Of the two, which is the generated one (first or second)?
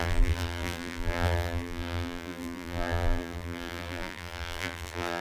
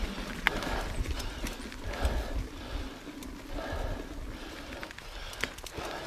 first